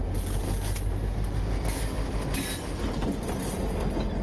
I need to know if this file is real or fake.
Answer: real